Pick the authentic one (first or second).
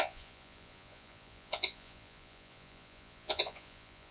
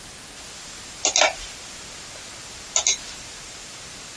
second